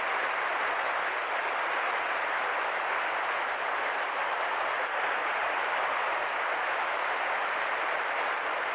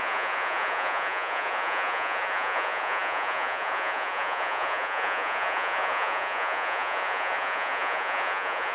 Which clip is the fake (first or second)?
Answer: second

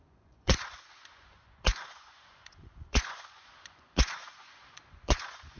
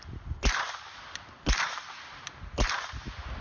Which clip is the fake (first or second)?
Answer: first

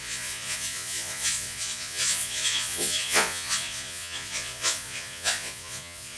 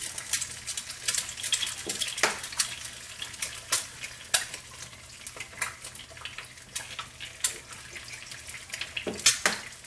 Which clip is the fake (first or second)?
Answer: first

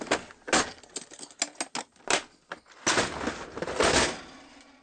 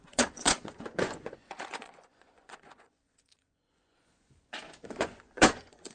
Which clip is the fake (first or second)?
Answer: second